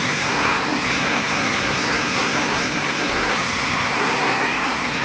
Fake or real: fake